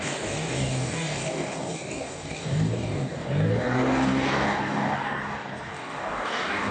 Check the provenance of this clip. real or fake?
fake